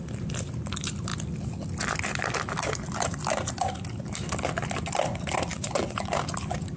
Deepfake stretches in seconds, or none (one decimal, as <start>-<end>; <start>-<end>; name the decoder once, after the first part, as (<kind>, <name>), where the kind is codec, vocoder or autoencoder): 5.5-6.1 (vocoder, WaveNeXt)